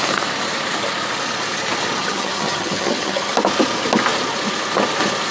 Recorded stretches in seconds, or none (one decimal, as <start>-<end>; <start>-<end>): 0.0-2.0; 3.3-5.3